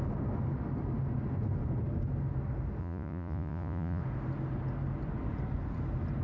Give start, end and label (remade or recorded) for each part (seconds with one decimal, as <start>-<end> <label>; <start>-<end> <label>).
0.0-2.8 recorded; 2.8-4.0 remade; 4.0-6.2 recorded